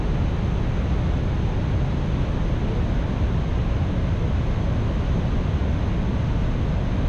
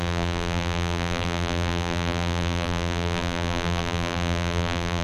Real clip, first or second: first